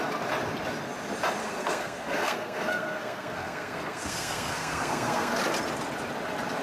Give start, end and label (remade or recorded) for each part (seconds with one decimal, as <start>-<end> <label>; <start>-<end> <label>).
0.0-1.4 recorded; 1.4-5.4 remade; 5.4-6.6 recorded